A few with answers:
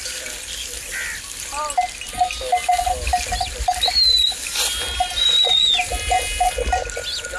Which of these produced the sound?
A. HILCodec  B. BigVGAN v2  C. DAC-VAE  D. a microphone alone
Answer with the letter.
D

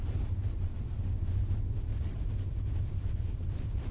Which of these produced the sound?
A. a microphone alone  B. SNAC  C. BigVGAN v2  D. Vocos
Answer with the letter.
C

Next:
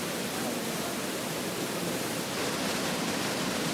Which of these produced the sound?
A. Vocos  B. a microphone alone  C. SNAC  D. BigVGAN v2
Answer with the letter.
B